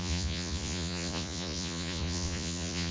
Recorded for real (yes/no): no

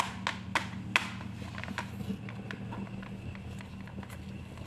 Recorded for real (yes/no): yes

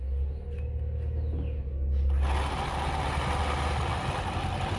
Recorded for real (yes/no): yes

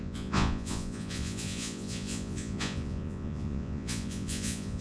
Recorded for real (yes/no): no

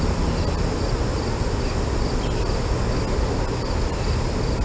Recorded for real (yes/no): yes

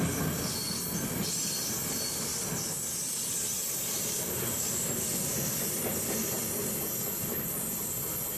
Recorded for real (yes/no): yes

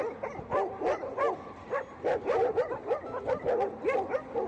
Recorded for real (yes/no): yes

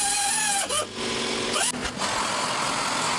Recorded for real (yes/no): yes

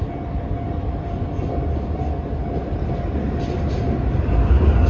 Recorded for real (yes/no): yes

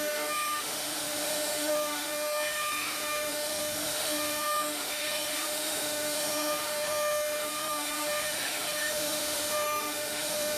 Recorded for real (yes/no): no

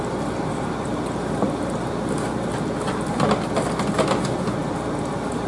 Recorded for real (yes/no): yes